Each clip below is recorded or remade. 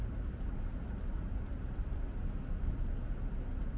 recorded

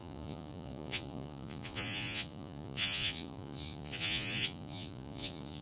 remade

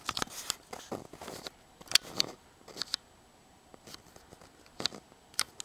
recorded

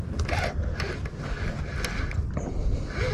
recorded